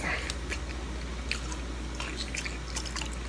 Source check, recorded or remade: recorded